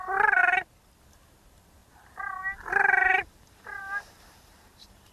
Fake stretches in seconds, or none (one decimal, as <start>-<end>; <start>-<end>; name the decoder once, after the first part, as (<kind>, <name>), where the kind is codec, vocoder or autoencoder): 1.8-5.1 (vocoder, BigVGAN v2)